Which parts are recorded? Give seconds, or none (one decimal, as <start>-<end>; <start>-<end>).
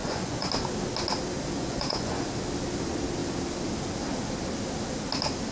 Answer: 0.5-1.6; 2.1-5.5